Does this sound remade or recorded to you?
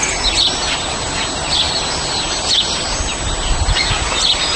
recorded